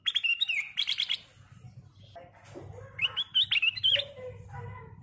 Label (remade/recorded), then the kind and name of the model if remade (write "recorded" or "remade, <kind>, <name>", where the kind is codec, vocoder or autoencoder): recorded